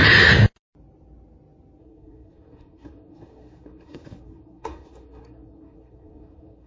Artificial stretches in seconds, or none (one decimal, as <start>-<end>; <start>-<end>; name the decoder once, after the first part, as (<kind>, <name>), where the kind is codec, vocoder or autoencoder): 1.8-6.7 (codec, SNAC)